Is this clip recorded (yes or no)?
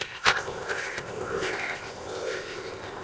no